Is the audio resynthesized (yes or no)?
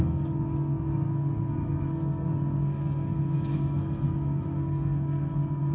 yes